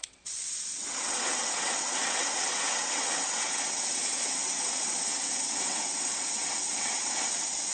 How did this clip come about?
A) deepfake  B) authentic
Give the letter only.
A